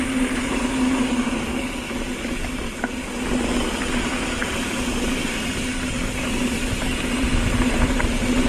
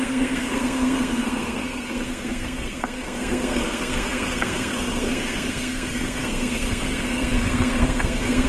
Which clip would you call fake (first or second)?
second